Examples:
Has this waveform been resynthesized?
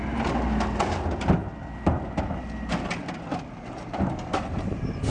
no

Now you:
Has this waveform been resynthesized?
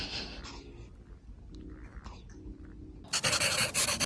no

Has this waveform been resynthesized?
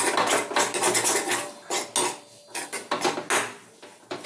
no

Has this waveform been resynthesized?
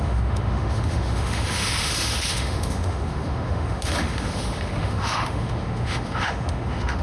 yes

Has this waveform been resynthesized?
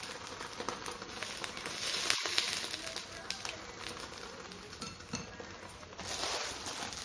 no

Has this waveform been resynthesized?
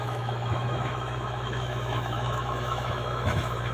yes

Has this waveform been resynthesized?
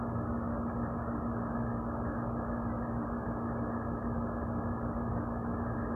no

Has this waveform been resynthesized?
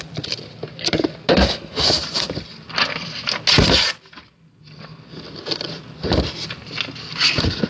no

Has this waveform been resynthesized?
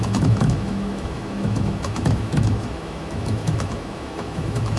yes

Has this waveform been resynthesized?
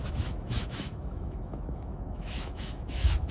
yes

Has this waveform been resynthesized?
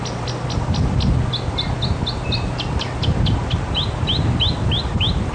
no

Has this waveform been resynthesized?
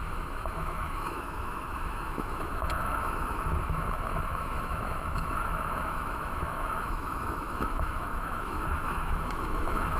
yes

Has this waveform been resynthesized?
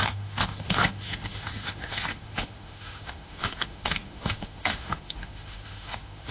yes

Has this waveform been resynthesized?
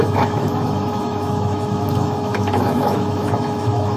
yes